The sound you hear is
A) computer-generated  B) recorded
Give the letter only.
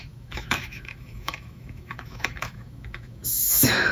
A